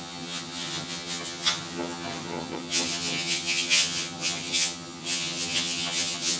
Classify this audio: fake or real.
fake